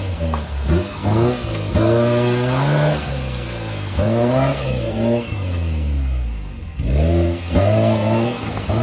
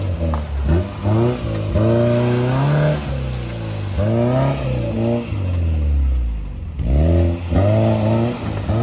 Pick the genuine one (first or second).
second